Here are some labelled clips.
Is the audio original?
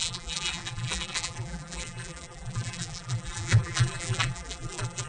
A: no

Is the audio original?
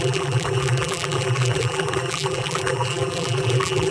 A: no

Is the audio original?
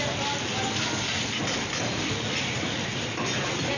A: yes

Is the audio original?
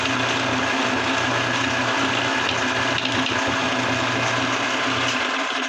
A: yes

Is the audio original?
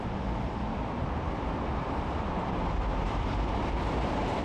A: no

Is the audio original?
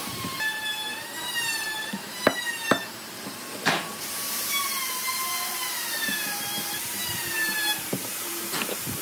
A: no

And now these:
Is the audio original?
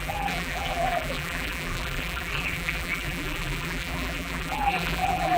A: no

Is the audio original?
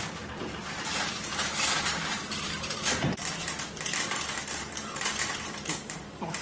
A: no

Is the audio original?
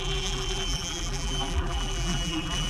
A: no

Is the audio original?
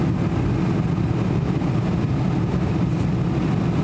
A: yes